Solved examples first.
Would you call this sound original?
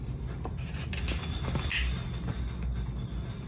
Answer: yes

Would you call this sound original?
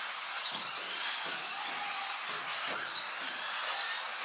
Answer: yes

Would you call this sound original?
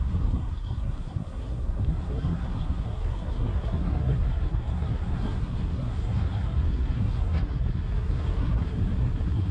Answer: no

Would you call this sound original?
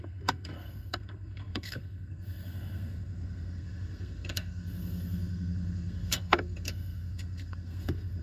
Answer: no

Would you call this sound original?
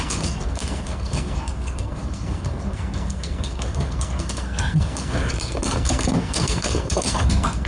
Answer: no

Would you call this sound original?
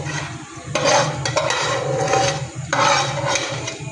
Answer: yes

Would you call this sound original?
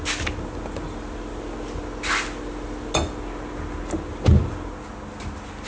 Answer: yes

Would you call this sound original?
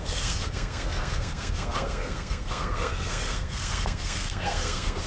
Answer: no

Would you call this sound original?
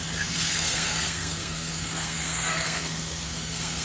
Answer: no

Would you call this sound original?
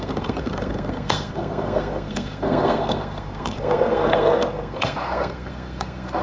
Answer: no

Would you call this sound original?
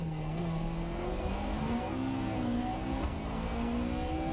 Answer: no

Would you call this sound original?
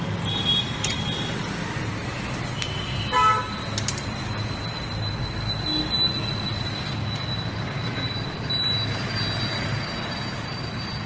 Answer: yes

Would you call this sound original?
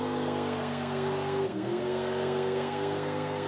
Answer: no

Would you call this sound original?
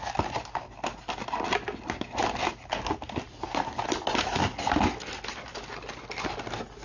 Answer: yes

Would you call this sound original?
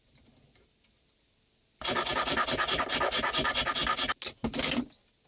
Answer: yes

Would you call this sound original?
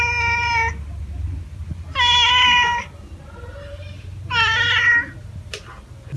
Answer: yes